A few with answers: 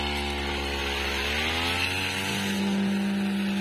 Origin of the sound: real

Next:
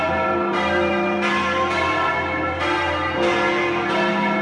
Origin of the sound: fake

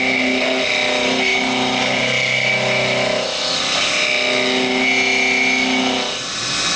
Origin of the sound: real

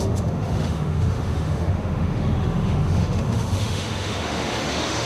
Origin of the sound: fake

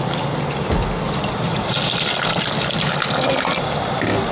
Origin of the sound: real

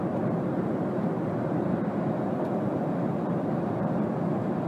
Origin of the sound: real